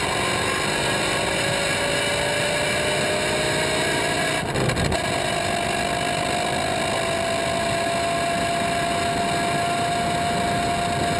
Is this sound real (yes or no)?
yes